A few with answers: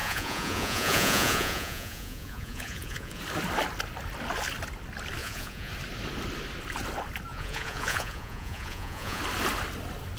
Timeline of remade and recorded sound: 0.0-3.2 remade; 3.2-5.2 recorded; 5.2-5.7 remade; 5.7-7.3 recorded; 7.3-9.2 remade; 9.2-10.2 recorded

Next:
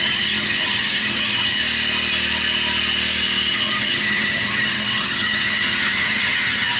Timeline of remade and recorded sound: 0.0-1.6 remade; 1.6-3.5 recorded; 3.5-6.8 remade

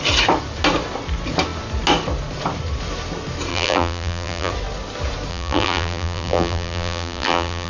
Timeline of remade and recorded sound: 0.0-3.5 recorded; 3.5-4.5 remade; 4.5-5.3 recorded; 5.3-7.7 remade

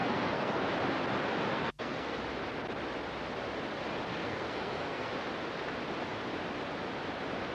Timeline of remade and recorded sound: 0.0-0.7 remade; 0.7-1.5 recorded; 1.5-2.2 remade; 2.2-4.1 recorded; 4.1-5.1 remade; 5.1-7.5 recorded

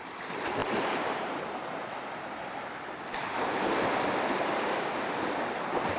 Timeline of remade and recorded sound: 0.0-6.0 recorded

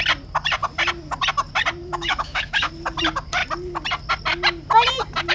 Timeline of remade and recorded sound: 0.0-1.8 recorded; 1.8-2.7 remade; 2.7-5.3 recorded